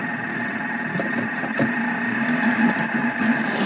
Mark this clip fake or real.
real